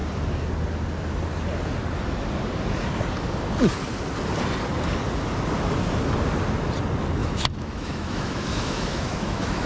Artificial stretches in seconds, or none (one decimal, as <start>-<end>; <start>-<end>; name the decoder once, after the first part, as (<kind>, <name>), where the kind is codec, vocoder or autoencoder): 7.2-9.7 (autoencoder, DAC-VAE)